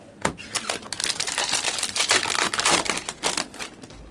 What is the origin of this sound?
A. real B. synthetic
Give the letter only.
A